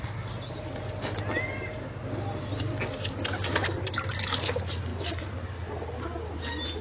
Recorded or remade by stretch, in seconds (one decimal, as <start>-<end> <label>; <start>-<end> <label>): 0.0-2.5 recorded; 2.5-3.1 remade; 3.1-4.9 recorded; 4.9-5.7 remade; 5.7-6.8 recorded